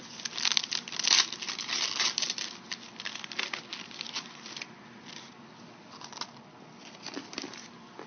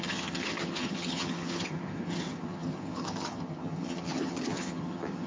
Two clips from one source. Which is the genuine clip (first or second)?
first